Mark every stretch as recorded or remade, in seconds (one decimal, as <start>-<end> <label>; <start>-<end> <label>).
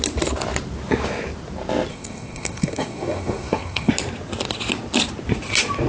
0.0-1.9 recorded; 1.9-3.9 remade; 3.9-5.9 recorded